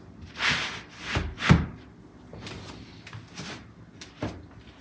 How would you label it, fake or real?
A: real